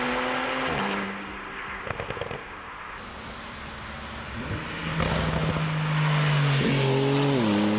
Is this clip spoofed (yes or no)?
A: no